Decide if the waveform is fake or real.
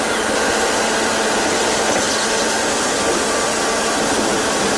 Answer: real